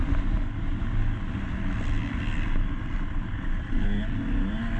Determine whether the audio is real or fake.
real